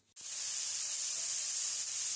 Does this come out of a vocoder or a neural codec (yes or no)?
no